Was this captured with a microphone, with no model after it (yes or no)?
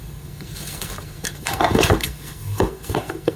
no